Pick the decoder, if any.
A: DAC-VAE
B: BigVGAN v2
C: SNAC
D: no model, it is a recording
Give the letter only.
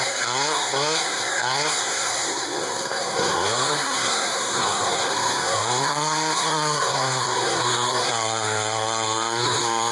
C